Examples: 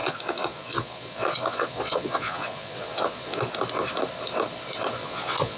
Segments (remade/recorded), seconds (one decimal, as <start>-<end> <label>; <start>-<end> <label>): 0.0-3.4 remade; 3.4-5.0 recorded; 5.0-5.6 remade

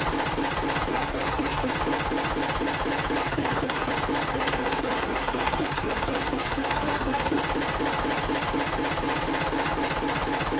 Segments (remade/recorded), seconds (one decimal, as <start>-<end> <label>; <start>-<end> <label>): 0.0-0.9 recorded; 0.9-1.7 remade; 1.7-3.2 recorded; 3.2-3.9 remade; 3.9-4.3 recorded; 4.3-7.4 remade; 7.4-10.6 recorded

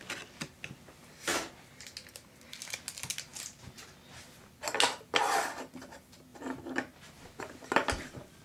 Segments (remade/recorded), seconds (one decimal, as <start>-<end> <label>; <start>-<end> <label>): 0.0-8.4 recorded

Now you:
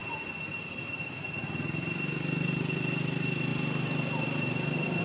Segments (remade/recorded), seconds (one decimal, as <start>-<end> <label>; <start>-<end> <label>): 0.0-0.5 recorded; 0.5-5.0 remade